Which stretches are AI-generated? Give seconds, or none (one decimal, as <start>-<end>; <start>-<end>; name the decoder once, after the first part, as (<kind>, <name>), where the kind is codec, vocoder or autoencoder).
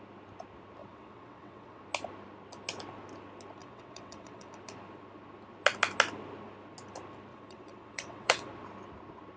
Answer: 0.8-1.8 (vocoder, WaveNeXt); 3.6-4.5; 7.3-8.5